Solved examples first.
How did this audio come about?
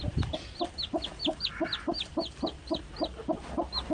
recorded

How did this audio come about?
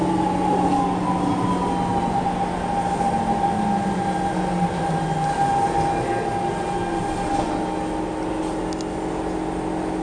recorded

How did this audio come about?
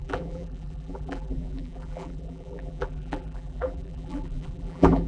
remade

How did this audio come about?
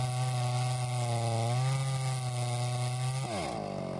recorded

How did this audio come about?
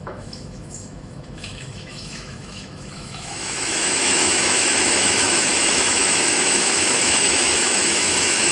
remade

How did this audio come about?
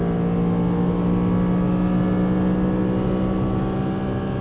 recorded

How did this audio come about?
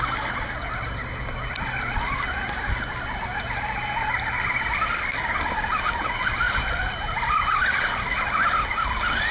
recorded